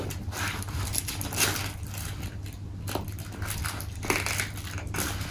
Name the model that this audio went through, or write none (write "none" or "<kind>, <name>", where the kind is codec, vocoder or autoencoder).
none